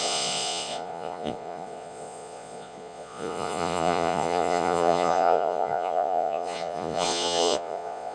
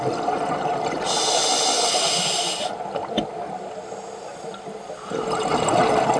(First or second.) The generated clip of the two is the first